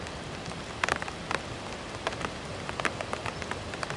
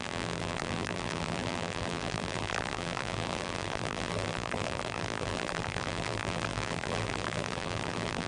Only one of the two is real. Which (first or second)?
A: first